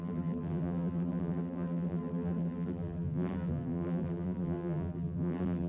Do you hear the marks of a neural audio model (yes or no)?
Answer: yes